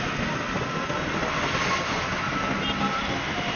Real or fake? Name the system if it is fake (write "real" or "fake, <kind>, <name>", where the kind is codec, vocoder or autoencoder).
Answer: real